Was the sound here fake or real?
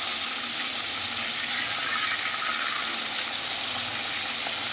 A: real